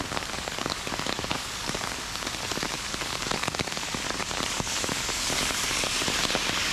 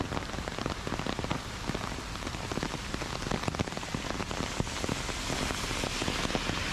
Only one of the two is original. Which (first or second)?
second